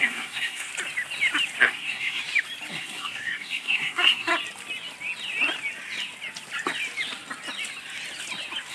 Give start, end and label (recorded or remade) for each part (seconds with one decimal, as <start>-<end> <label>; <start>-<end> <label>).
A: 0.0-0.7 remade; 0.7-1.6 recorded; 1.6-2.2 remade; 2.2-2.7 recorded; 2.7-4.3 remade; 4.3-8.7 recorded